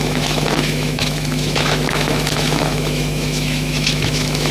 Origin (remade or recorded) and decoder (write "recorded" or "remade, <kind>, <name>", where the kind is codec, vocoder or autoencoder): remade, autoencoder, DAC-VAE